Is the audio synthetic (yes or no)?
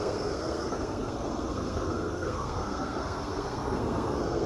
yes